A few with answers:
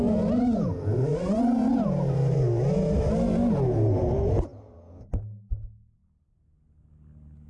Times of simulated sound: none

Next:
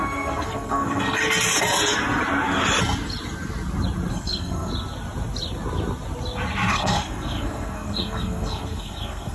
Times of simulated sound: 0.0-1.2 (codec, SNAC); 4.1-4.7; 6.7-9.3

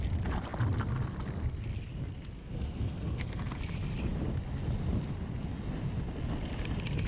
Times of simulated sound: 2.4-3.6 (codec, SNAC)

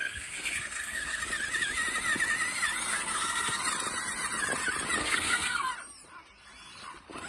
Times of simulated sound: 0.0-1.2 (codec, SNAC); 2.9-3.6; 5.0-5.7

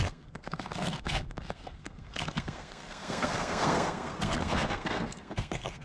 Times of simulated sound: 0.0-5.8 (codec, SNAC)

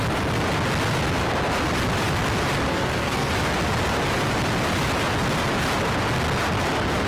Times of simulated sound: 2.7-3.3 (codec, SNAC)